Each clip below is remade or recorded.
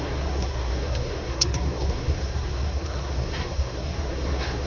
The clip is remade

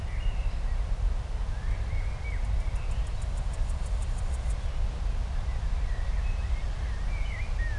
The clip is recorded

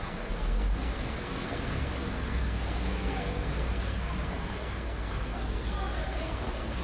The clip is remade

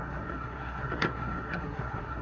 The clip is remade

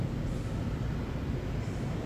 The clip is recorded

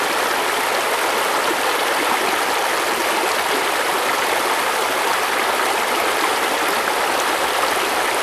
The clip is recorded